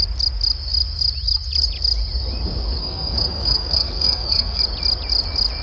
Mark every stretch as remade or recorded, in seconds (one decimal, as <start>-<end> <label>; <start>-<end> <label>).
0.0-2.8 recorded; 2.8-4.6 remade; 4.6-5.6 recorded